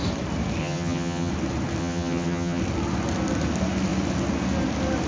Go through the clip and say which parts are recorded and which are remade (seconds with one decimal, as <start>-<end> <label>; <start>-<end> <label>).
0.0-0.6 recorded; 0.6-1.3 remade; 1.3-1.8 recorded; 1.8-2.6 remade; 2.6-5.1 recorded

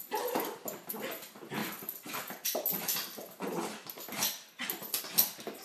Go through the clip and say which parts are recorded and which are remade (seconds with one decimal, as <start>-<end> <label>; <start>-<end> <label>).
0.0-5.6 recorded

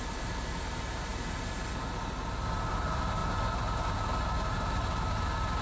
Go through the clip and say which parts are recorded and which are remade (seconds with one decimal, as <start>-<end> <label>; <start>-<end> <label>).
0.0-1.1 remade; 1.1-2.7 recorded; 2.7-3.2 remade; 3.2-5.6 recorded

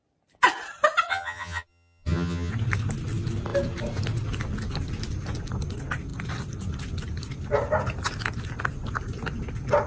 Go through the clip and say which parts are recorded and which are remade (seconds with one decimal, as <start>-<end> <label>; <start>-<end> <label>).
0.0-1.1 recorded; 1.1-2.5 remade; 2.5-9.9 recorded

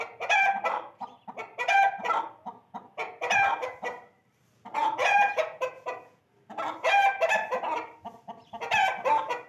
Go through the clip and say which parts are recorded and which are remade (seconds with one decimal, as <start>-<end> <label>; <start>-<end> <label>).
0.0-4.8 recorded; 4.8-6.2 remade; 6.2-9.5 recorded

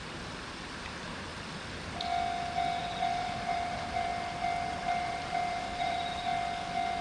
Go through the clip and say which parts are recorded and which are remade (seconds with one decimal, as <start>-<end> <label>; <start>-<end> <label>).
0.0-1.3 remade; 1.3-2.8 recorded; 2.8-4.1 remade; 4.1-4.7 recorded; 4.7-6.3 remade; 6.3-7.0 recorded